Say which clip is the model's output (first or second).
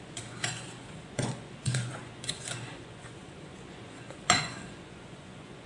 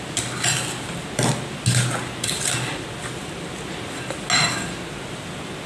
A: first